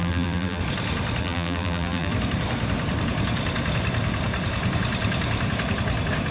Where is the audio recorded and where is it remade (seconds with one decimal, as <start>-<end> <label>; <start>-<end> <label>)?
0.0-0.6 remade; 0.6-1.2 recorded; 1.2-2.1 remade; 2.1-6.3 recorded